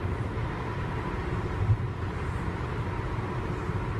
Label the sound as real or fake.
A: real